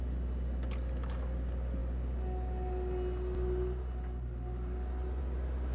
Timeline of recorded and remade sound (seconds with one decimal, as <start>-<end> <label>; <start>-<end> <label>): 0.0-5.7 recorded